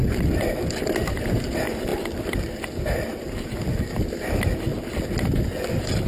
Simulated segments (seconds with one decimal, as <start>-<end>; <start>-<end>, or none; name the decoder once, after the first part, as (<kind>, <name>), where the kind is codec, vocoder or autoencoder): none